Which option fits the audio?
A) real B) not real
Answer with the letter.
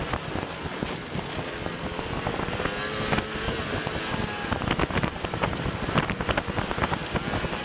A